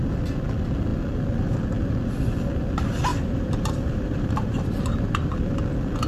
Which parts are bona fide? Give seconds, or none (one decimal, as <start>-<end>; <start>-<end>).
0.0-3.1; 5.6-6.1